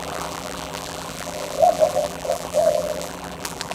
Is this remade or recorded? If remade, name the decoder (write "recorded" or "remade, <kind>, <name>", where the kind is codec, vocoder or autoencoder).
remade, vocoder, BigVGAN v2